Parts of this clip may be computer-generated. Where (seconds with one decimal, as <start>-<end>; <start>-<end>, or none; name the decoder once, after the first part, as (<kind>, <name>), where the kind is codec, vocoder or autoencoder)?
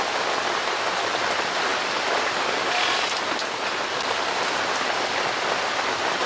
none